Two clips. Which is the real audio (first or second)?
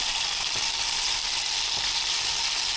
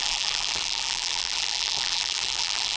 first